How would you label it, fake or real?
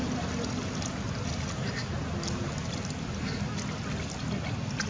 real